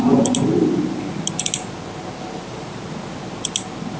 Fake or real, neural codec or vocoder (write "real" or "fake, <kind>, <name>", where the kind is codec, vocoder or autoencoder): real